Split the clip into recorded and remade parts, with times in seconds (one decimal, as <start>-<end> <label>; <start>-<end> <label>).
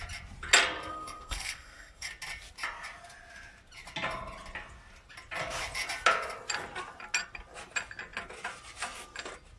0.0-0.9 recorded; 0.9-2.1 remade; 2.1-9.6 recorded